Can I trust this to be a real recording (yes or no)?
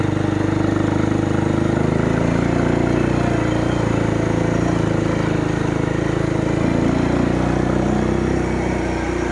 yes